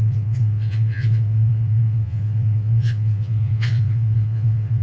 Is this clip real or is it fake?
fake